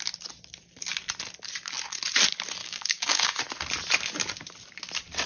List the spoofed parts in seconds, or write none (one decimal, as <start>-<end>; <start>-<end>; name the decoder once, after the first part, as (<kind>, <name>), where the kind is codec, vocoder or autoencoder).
2.6-3.4 (codec, DAC)